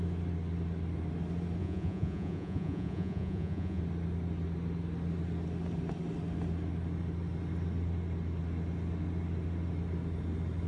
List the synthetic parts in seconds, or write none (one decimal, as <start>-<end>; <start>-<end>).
1.6-3.8